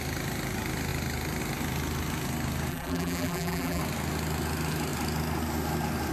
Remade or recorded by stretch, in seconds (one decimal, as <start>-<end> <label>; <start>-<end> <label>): 0.0-2.7 recorded; 2.7-3.8 remade; 3.8-6.1 recorded